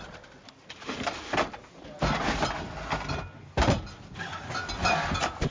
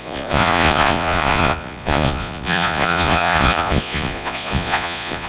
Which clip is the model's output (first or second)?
second